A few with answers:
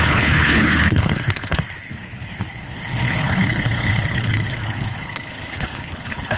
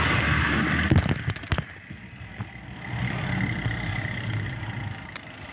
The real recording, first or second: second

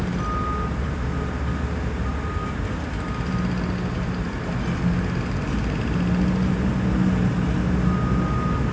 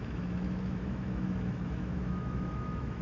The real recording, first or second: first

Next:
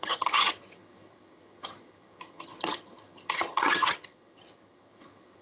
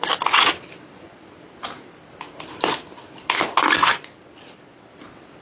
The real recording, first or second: second